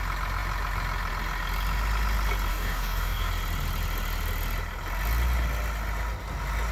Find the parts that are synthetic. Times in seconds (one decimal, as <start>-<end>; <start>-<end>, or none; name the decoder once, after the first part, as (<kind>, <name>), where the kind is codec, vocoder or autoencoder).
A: 2.5-3.3 (codec, DAC)